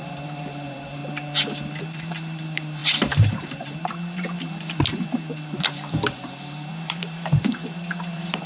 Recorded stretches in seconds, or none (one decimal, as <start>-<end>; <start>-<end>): 1.0-1.8